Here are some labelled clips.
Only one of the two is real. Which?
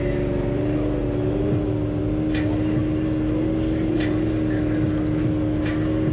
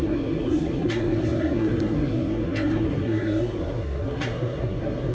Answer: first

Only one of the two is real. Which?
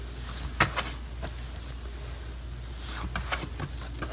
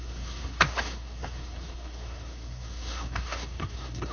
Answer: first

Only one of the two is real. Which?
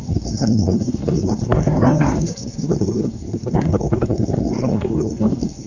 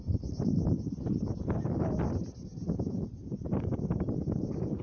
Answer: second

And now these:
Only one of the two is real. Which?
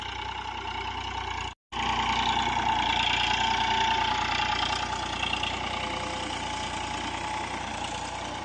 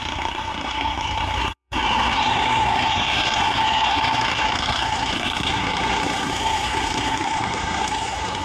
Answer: first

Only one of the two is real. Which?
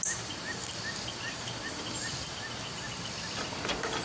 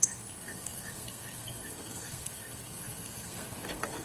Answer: first